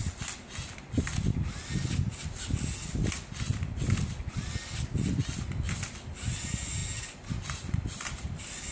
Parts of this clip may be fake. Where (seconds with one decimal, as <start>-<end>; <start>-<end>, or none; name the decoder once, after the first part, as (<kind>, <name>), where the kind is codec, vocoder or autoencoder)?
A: none